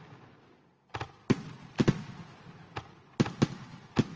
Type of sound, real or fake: real